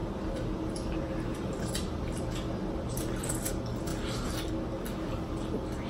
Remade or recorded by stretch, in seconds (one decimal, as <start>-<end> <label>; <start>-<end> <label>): 0.0-3.5 remade; 3.5-5.9 recorded